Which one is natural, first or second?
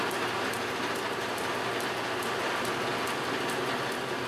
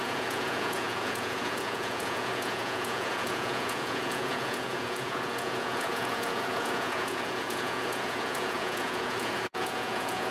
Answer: first